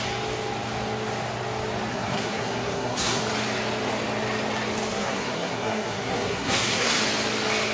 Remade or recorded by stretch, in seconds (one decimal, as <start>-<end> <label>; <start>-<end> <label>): 0.0-1.9 recorded; 1.9-3.2 remade; 3.2-4.9 recorded; 4.9-7.0 remade; 7.0-7.7 recorded